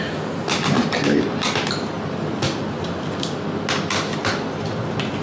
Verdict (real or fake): real